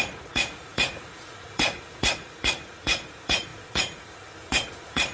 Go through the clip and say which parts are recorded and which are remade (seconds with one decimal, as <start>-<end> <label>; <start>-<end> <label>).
0.0-5.1 remade